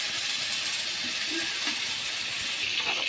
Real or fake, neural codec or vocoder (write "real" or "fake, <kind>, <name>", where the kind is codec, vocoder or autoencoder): real